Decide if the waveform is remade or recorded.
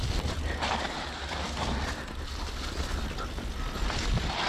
recorded